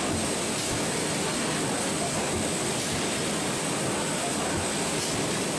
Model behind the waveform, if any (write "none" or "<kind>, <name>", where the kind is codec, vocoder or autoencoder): none